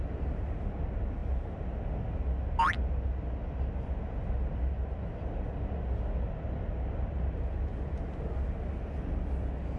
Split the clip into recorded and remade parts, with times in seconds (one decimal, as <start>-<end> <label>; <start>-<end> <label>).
0.0-9.8 recorded